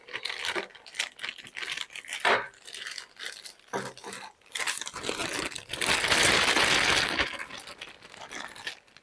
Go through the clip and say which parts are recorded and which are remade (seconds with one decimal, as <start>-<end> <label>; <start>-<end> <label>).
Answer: 0.0-5.2 remade; 5.2-8.3 recorded; 8.3-9.0 remade

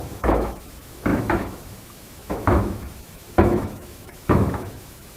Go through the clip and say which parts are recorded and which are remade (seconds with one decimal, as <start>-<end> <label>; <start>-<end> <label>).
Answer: 0.0-5.2 remade